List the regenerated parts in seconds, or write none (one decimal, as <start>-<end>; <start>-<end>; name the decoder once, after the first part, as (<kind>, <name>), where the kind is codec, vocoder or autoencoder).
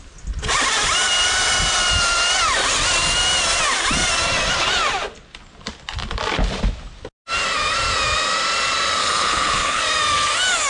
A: 9.0-9.8 (codec, HILCodec)